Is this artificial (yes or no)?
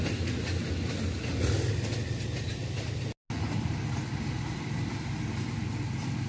no